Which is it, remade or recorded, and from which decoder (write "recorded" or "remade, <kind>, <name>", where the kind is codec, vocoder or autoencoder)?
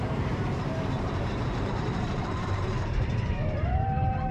remade, vocoder, BigVGAN v2